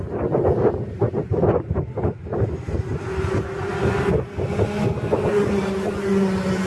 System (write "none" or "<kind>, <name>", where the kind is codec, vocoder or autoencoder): none